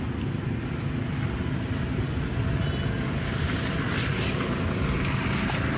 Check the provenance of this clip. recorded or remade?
recorded